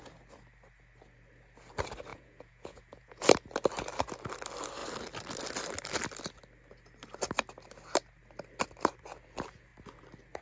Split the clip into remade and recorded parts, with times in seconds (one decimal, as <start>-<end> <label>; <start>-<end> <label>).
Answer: 0.0-2.1 recorded; 2.1-3.2 remade; 3.2-10.4 recorded